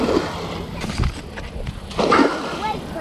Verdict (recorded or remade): recorded